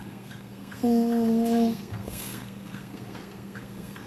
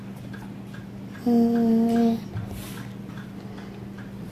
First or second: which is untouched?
second